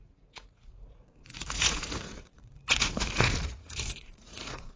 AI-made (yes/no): yes